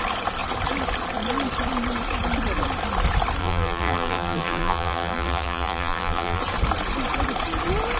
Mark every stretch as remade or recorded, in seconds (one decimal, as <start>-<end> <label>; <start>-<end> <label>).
0.0-3.4 recorded; 3.4-6.4 remade; 6.4-8.0 recorded